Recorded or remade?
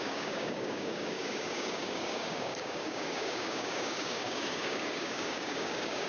remade